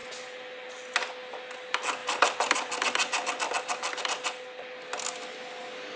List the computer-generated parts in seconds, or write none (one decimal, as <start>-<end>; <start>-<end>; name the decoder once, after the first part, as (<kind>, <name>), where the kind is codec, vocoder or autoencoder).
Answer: 2.0-4.0 (vocoder, BigVGAN v2)